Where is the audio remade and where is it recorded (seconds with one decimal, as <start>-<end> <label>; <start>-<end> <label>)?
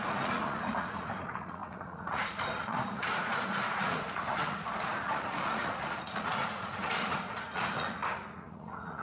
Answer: 0.0-9.0 remade